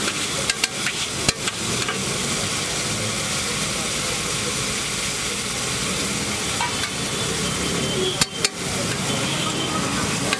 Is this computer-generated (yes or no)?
no